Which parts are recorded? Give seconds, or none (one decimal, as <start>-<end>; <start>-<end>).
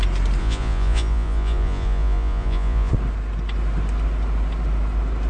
0.0-0.4; 2.9-5.3